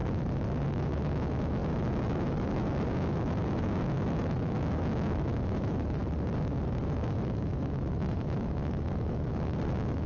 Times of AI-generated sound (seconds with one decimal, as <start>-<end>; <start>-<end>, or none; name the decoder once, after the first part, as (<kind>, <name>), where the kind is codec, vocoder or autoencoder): 0.7-6.0 (autoencoder, DAC-VAE); 6.8-10.1